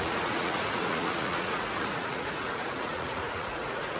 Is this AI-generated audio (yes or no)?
yes